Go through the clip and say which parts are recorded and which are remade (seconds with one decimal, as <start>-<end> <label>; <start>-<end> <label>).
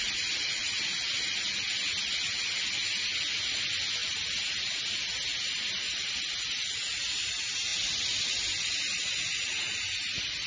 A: 0.0-10.5 recorded